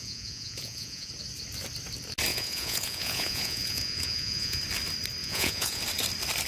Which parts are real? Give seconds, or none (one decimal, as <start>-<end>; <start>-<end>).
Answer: 1.1-2.3; 4.6-5.2; 5.8-6.5